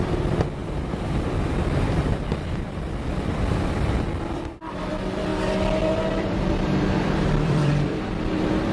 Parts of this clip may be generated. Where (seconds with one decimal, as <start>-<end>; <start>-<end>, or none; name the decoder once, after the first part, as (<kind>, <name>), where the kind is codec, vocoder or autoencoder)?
0.0-5.3 (vocoder, BigVGAN v2); 5.8-8.7